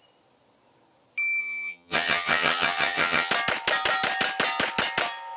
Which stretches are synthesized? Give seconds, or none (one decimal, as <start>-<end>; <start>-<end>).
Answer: 1.4-3.3